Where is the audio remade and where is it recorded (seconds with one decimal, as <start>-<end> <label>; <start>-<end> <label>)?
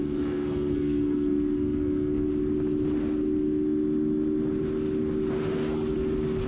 0.0-2.3 remade; 2.3-6.5 recorded